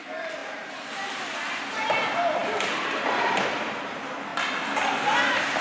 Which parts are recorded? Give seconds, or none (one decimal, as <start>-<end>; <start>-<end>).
0.0-5.6